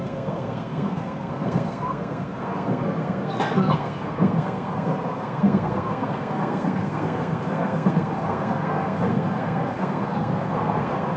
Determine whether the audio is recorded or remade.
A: remade